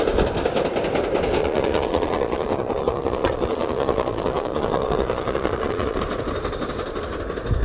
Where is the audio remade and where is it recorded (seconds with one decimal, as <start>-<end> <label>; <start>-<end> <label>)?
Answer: 0.0-1.4 recorded; 1.4-6.0 remade; 6.0-7.6 recorded